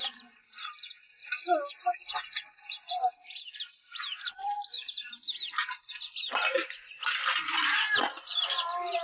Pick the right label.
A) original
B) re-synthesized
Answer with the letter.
A